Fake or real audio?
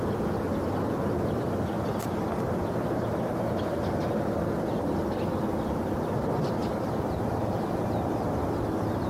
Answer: real